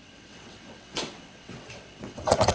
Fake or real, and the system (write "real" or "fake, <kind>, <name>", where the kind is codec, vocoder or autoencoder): fake, vocoder, WaveNeXt